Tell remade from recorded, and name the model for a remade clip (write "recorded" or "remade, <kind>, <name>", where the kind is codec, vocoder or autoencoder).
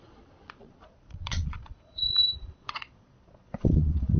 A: remade, vocoder, Vocos